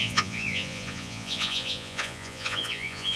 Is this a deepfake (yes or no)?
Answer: yes